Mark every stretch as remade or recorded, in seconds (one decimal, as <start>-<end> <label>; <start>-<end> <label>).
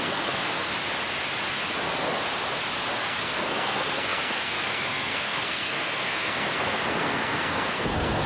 0.0-0.7 remade; 0.7-3.0 recorded; 3.0-8.3 remade